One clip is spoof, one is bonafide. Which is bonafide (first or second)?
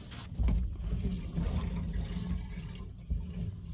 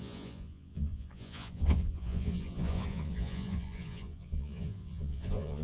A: first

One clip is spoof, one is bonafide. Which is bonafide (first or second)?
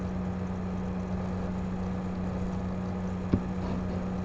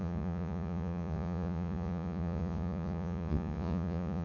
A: first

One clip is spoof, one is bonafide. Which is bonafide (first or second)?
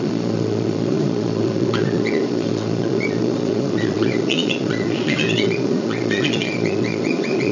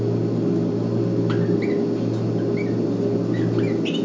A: second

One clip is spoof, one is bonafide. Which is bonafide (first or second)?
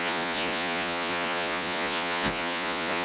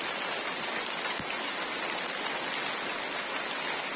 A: second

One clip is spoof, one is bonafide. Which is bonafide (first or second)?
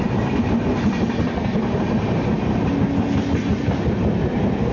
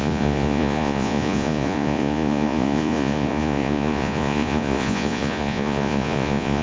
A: first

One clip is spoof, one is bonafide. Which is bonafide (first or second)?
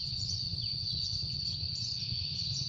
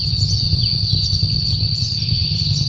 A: second